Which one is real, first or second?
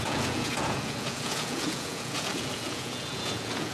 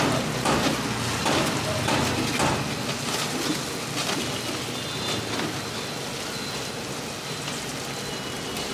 second